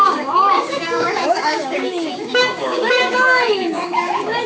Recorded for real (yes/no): no